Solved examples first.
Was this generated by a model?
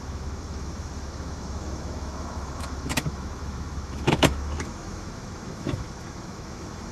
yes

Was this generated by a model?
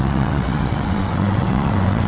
yes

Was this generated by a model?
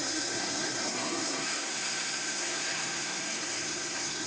yes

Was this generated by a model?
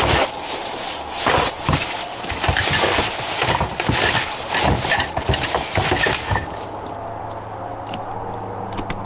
no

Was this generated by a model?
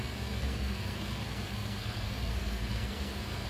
yes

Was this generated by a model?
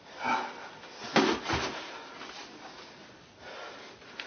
no